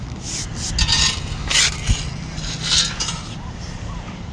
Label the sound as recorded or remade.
recorded